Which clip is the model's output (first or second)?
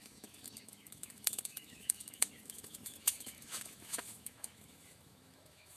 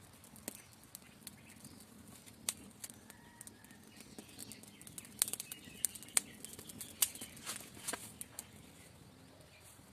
first